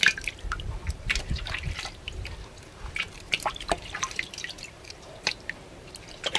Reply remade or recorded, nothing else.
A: remade